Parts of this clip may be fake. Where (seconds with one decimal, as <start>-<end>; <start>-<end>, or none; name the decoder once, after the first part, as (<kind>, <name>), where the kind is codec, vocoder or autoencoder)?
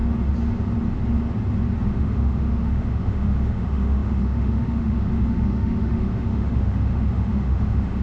1.9-8.0 (autoencoder, DAC-VAE)